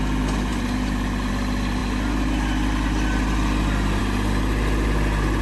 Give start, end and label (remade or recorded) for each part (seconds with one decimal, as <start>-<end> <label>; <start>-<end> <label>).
0.0-5.4 recorded